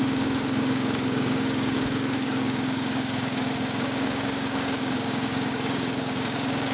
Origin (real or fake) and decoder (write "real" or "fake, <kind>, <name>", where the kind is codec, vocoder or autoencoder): fake, codec, DAC